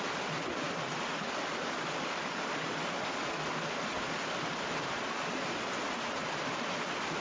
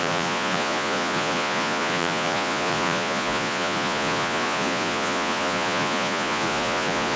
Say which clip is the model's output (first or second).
second